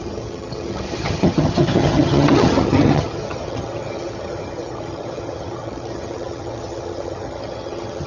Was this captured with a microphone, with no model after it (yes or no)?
no